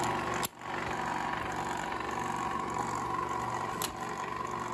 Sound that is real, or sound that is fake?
real